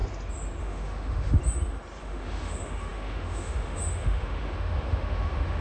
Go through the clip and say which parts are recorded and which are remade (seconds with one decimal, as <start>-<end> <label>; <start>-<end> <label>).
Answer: 0.0-0.6 recorded; 0.6-1.4 remade; 1.4-2.0 recorded; 2.0-5.6 remade